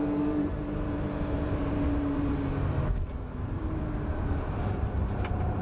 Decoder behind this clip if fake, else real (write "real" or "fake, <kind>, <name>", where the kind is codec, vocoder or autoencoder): fake, vocoder, BigVGAN v2